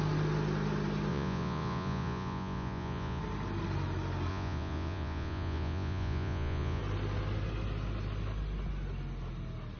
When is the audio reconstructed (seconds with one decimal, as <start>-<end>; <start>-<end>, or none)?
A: 1.1-3.2; 4.3-6.8

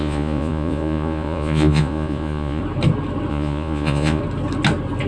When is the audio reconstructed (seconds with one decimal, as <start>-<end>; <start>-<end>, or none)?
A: 0.0-2.6; 3.3-4.2